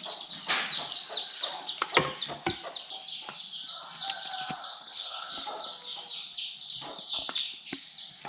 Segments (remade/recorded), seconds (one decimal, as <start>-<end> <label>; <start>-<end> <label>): 0.0-4.7 recorded; 4.7-5.3 remade; 5.3-8.3 recorded